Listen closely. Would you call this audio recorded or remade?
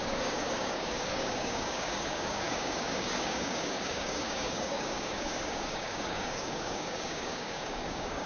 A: remade